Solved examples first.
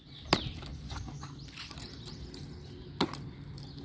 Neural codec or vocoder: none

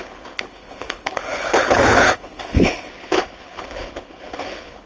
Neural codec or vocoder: codec, HILCodec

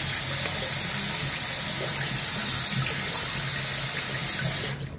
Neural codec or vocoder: none